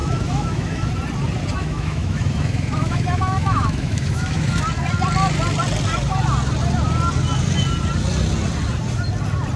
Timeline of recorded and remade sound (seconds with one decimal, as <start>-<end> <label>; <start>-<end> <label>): 0.0-0.9 remade; 0.9-1.6 recorded; 1.6-4.6 remade; 4.6-9.6 recorded